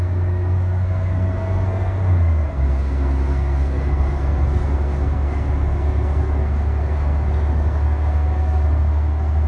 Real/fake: fake